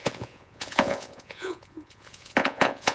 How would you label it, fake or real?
fake